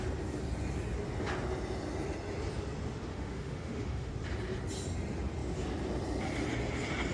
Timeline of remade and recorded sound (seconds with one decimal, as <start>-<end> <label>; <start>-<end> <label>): 0.0-3.1 recorded; 3.1-4.1 remade; 4.1-7.1 recorded